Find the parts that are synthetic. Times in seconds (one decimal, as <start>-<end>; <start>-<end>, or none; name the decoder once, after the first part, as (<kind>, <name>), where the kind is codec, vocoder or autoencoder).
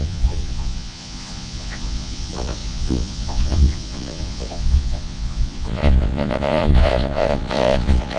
0.0-8.2 (vocoder, Vocos)